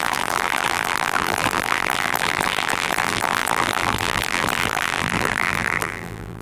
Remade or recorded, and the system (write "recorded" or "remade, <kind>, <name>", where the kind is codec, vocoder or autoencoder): remade, vocoder, BigVGAN v2